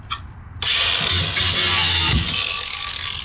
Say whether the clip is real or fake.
real